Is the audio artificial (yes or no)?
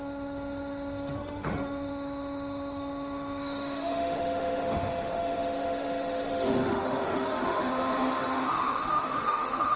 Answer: yes